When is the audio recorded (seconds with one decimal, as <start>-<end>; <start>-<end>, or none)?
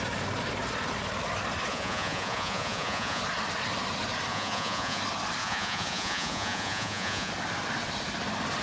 0.0-1.7; 3.2-4.3; 5.0-5.4; 7.3-8.6